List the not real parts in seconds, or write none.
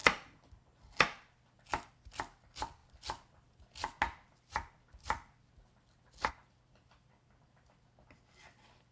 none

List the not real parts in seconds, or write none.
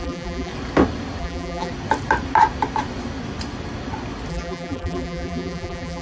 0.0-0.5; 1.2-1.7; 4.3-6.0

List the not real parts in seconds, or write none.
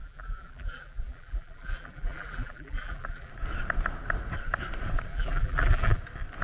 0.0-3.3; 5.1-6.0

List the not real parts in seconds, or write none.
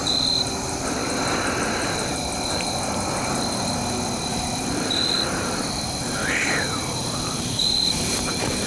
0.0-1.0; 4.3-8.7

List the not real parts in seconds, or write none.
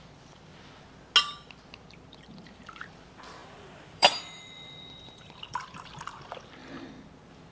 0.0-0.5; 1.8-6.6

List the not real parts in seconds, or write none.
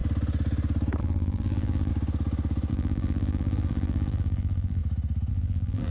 1.0-1.9; 2.7-4.8; 5.3-5.9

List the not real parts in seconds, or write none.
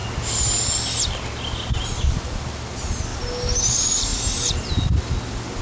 1.7-3.1; 3.6-5.6